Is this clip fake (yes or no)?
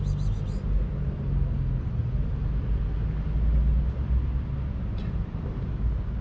no